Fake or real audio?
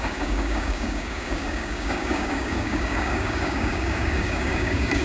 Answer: fake